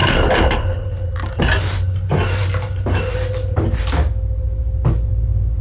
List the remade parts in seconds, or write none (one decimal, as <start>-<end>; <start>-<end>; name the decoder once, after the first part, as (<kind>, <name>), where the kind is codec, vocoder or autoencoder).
none